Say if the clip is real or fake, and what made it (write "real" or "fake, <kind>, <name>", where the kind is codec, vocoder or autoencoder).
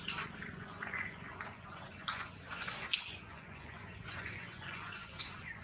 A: fake, vocoder, Vocos